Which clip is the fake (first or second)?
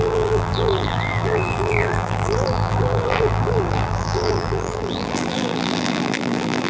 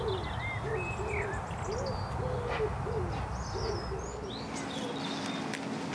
first